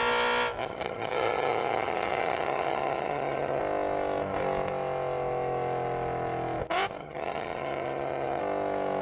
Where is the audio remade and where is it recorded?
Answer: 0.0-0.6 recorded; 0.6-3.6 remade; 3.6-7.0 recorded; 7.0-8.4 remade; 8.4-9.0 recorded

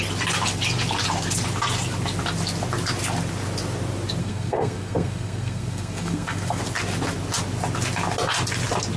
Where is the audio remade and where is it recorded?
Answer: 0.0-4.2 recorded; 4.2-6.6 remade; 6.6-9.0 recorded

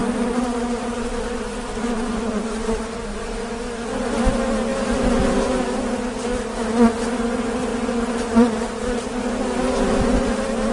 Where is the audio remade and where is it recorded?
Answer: 0.0-3.6 remade; 3.6-4.7 recorded; 4.7-5.3 remade; 5.3-7.7 recorded; 7.7-9.2 remade; 9.2-10.7 recorded

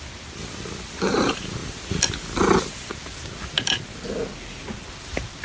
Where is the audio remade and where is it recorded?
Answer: 0.0-5.4 recorded

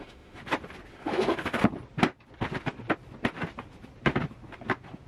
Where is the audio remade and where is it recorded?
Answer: 0.0-0.4 remade; 0.4-0.9 recorded; 0.9-1.6 remade; 1.6-5.1 recorded

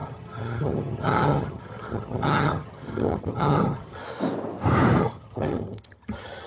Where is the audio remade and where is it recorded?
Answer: 0.0-4.0 remade; 4.0-5.0 recorded; 5.0-6.5 remade

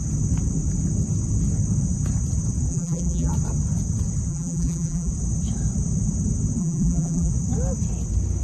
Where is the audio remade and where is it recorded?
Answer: 0.0-2.7 recorded; 2.7-3.3 remade; 3.3-4.3 recorded; 4.3-5.1 remade; 5.1-6.6 recorded; 6.6-7.3 remade; 7.3-8.4 recorded